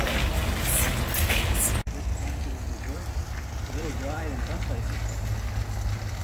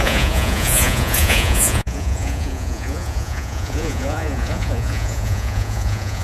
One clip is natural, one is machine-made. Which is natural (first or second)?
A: first